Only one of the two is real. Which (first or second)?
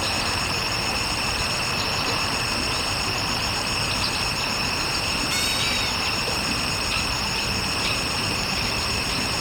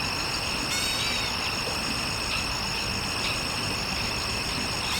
second